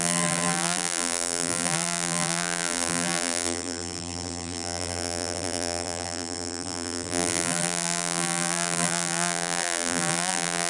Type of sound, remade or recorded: remade